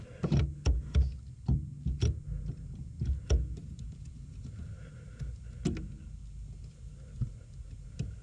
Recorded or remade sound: recorded